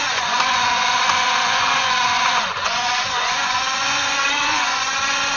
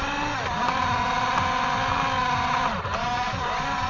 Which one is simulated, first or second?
first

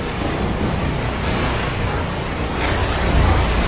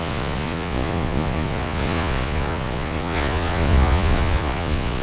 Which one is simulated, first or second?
second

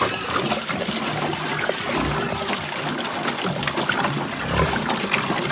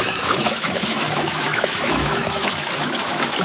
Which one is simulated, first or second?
second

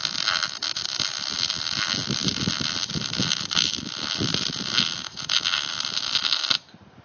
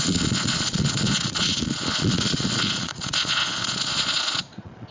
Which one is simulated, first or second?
second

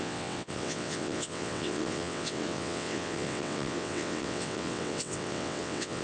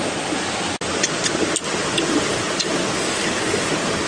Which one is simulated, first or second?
first